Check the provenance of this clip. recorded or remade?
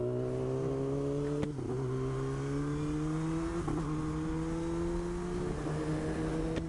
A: recorded